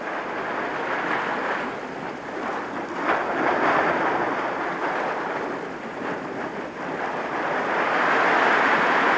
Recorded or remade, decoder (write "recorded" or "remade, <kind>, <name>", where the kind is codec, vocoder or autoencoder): recorded